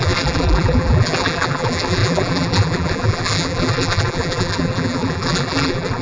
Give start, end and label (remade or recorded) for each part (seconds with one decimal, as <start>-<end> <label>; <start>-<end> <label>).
0.0-6.0 remade